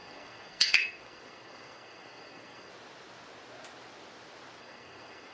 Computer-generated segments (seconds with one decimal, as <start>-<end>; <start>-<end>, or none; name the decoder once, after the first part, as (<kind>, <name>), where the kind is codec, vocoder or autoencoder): 0.0-2.7 (codec, SNAC); 4.6-5.3